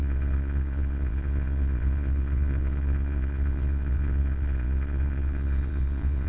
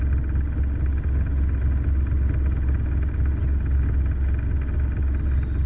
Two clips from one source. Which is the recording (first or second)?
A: second